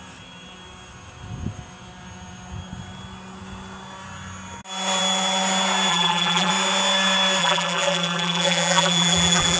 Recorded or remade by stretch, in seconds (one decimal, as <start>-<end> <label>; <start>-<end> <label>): 0.0-5.9 recorded; 5.9-6.5 remade; 6.5-7.4 recorded; 7.4-9.6 remade